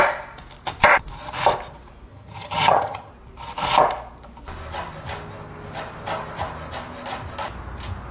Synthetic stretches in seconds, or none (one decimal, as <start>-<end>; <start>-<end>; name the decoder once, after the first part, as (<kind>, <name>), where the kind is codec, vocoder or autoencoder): 2.1-3.1 (vocoder, HiFi-GAN)